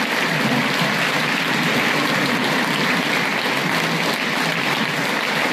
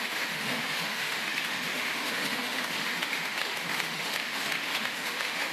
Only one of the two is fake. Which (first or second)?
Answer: second